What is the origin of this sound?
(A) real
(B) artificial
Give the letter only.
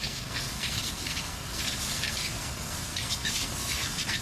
B